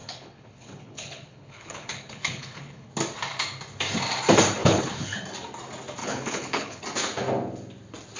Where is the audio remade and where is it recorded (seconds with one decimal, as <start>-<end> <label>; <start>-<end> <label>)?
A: 0.0-2.9 remade; 2.9-4.6 recorded; 4.6-5.2 remade; 5.2-6.0 recorded; 6.0-6.8 remade; 6.8-8.2 recorded